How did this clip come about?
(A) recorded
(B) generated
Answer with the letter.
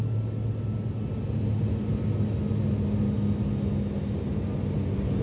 A